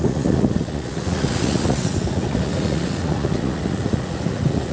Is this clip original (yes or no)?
no